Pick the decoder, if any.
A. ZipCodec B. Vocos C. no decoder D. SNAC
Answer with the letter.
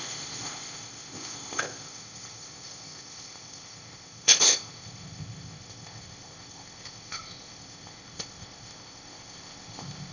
A